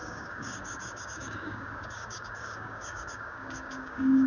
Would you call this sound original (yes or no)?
no